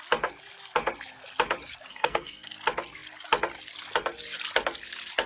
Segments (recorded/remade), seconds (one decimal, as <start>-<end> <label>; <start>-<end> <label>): 0.0-1.9 recorded; 1.9-2.5 remade; 2.5-5.3 recorded